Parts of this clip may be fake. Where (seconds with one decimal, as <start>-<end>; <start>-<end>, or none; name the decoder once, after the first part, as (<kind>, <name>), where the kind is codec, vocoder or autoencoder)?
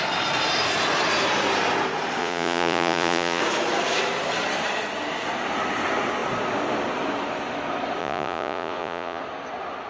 2.2-3.4 (vocoder, Vocos); 8.0-9.2